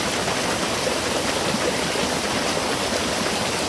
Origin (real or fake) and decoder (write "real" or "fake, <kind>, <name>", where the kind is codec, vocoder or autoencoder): real